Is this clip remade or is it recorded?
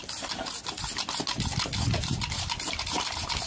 recorded